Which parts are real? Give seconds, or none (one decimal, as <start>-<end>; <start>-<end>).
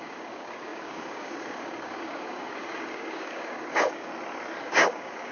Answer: 4.1-4.6